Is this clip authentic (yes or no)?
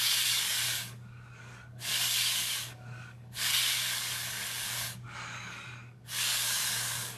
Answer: no